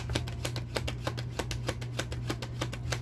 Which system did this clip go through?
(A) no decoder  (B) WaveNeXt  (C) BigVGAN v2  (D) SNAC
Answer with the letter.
A